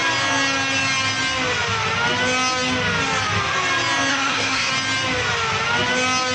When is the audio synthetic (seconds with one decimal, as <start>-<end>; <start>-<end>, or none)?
4.1-4.7